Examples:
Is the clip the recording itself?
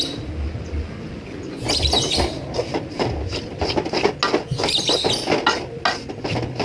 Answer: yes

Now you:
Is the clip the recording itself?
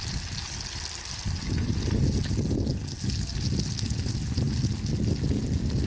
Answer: yes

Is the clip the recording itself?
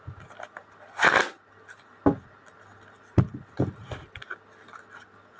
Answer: yes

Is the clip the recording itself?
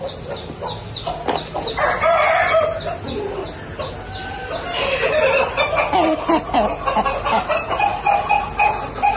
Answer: yes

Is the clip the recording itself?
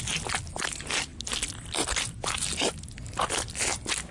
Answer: yes